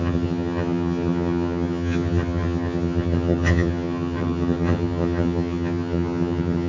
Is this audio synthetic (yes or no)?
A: yes